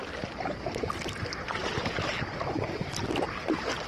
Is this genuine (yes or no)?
yes